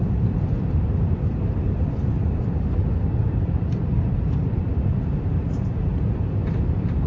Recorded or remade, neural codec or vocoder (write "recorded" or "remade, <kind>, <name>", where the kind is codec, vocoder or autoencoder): remade, vocoder, BigVGAN v2